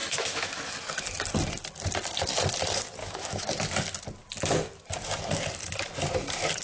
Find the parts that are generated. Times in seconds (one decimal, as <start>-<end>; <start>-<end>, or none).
0.0-0.6; 3.0-3.6